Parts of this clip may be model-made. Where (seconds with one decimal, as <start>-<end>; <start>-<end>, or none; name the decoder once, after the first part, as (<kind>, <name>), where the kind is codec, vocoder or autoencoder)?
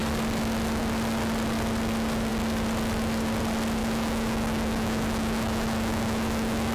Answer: 3.8-6.7 (autoencoder, DAC-VAE)